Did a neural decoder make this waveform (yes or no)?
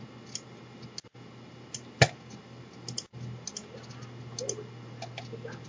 no